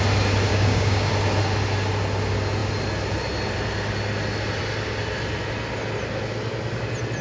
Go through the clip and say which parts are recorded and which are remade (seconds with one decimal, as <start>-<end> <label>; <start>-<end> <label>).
0.0-0.5 recorded; 0.5-1.1 remade; 1.1-7.2 recorded